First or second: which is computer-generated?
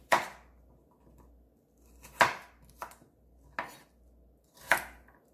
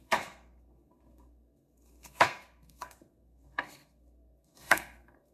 second